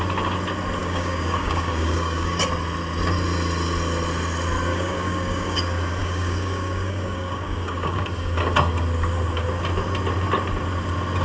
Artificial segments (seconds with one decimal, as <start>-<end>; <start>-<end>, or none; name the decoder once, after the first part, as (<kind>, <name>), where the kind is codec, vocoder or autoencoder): 0.8-2.4 (codec, DAC); 4.7-5.6; 6.0-8.0